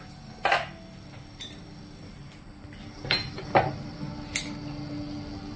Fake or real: real